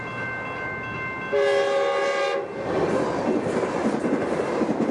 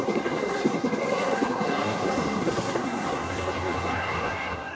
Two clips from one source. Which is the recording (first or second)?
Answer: first